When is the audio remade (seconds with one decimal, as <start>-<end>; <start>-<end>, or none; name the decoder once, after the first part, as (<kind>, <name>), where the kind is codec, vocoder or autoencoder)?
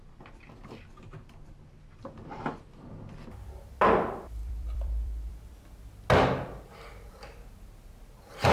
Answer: 4.4-5.3 (vocoder, BigVGAN v2)